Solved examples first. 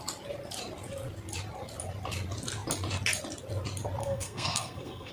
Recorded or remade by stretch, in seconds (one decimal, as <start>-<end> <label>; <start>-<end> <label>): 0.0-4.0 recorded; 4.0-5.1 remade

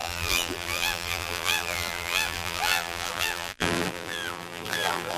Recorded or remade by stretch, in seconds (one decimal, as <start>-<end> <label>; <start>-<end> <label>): 0.0-5.2 remade

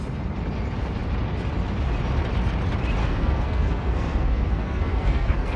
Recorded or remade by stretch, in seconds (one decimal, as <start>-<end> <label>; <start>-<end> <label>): 0.0-3.0 recorded; 3.0-5.6 remade